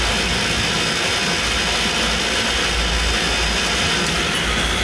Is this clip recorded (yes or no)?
yes